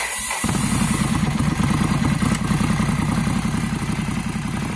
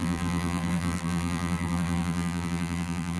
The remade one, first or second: second